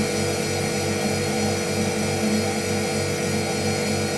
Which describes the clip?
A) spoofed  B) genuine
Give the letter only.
B